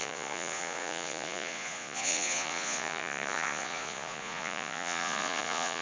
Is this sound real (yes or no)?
no